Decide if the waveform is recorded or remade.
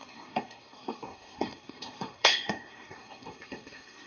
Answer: remade